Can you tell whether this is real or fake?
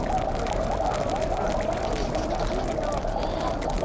real